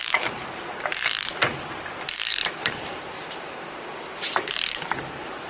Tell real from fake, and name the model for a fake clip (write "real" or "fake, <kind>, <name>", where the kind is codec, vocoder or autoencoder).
fake, vocoder, BigVGAN v2